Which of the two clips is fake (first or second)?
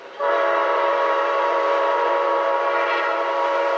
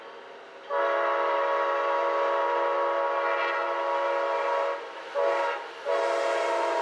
first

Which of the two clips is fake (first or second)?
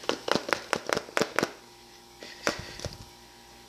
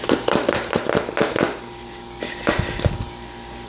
second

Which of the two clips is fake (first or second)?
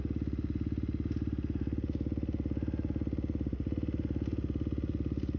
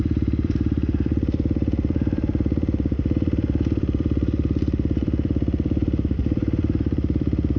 second